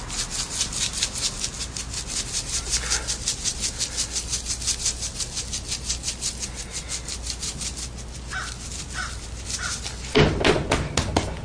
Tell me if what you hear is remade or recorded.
recorded